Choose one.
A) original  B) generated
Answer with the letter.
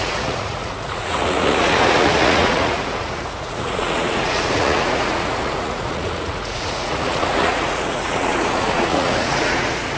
B